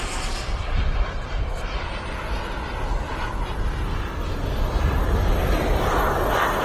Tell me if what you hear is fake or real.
real